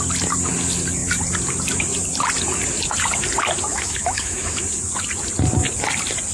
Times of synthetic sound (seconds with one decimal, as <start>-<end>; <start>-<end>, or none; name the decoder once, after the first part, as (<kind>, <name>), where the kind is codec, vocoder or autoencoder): 3.7-4.6 (autoencoder, DAC-VAE)